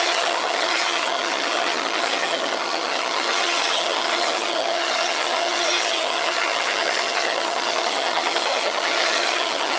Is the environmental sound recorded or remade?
remade